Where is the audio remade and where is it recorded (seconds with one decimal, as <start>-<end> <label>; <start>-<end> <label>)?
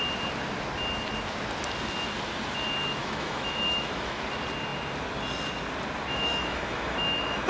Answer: 0.0-3.0 recorded; 3.0-4.2 remade; 4.2-6.1 recorded; 6.1-7.5 remade